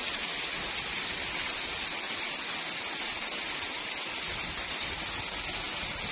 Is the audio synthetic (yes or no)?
no